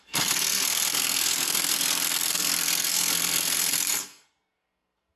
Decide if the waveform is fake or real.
fake